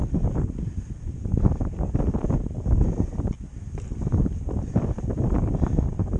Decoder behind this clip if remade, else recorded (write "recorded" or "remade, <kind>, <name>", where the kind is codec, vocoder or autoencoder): recorded